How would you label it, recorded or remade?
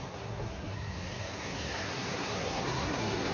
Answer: remade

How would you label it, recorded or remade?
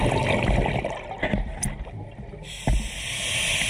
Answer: recorded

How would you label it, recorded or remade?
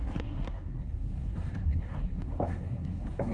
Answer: remade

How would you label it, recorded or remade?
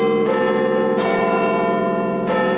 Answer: remade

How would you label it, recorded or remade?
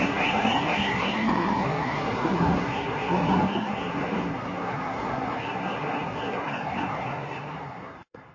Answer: remade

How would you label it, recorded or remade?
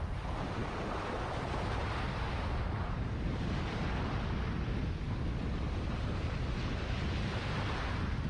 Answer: recorded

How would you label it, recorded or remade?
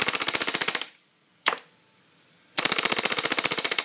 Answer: remade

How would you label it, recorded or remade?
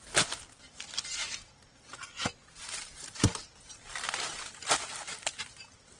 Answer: recorded